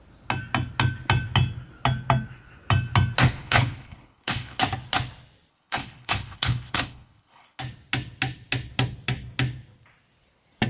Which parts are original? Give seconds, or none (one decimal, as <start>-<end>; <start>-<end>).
0.0-3.4; 4.6-5.5; 7.6-10.7